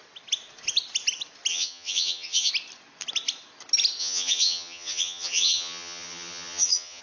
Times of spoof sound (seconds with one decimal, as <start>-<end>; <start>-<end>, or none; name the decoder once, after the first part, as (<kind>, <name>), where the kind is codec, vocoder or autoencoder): 1.5-2.5 (vocoder, HiFi-GAN); 4.0-7.0